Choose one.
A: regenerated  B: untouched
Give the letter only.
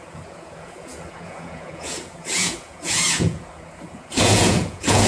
A